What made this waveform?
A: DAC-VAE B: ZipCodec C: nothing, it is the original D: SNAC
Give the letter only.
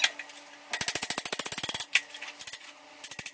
C